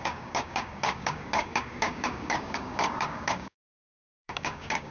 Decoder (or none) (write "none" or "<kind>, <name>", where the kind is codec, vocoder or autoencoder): codec, DAC